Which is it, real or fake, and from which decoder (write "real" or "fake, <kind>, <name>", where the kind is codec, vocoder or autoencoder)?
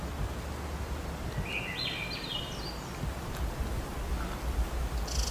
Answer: real